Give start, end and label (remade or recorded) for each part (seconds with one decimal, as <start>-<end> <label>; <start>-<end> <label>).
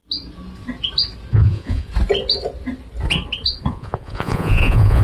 0.0-1.3 recorded; 1.3-1.9 remade; 1.9-3.7 recorded; 3.7-5.0 remade